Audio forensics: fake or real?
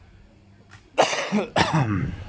real